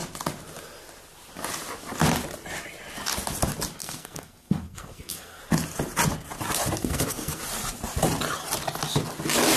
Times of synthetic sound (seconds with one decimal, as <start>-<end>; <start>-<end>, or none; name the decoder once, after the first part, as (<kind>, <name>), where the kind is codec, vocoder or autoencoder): 3.8-5.4 (codec, SNAC); 6.8-7.4